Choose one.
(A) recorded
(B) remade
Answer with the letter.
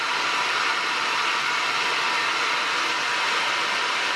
A